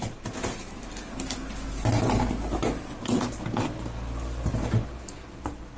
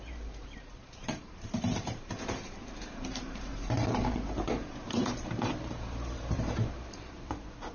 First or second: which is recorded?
first